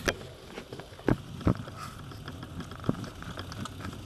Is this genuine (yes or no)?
yes